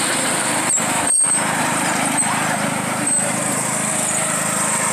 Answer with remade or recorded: remade